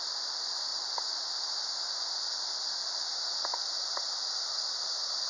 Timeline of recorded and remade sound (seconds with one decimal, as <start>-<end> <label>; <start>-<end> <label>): 0.0-5.3 recorded